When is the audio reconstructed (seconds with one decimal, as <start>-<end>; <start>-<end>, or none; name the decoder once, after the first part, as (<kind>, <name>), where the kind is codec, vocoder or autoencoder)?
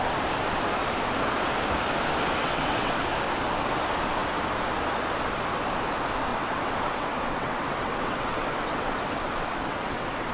2.4-3.0 (vocoder, WaveNeXt); 6.3-10.3